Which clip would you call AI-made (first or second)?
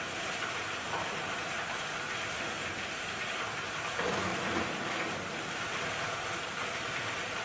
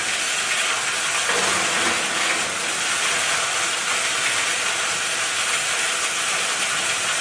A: first